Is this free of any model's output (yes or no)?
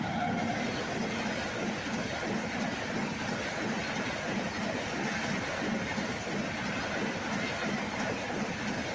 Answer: yes